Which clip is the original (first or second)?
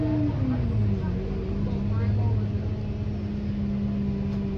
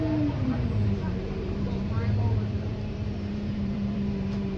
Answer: first